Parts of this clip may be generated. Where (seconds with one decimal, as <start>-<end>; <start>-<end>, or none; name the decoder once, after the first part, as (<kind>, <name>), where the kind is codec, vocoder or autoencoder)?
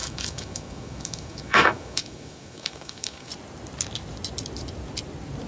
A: 0.0-3.3 (autoencoder, DAC-VAE)